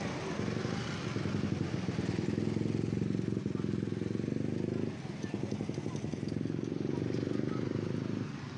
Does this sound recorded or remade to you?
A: recorded